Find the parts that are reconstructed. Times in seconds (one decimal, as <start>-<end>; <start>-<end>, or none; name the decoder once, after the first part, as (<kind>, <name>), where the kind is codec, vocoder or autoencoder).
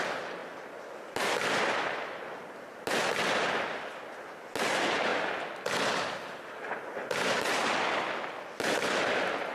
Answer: none